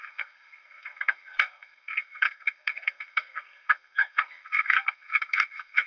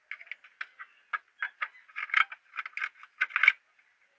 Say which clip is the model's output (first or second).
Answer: first